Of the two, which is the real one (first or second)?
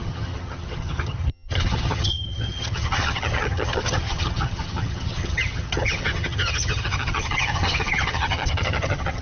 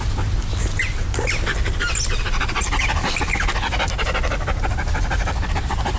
second